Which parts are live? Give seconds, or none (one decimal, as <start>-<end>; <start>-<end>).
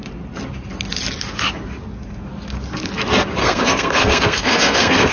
0.0-3.4